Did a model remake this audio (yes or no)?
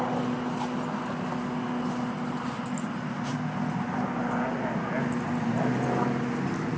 no